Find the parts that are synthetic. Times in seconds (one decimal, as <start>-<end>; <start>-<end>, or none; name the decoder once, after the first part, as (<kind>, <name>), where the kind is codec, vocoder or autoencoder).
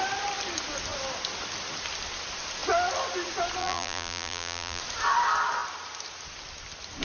3.6-4.8 (vocoder, BigVGAN v2)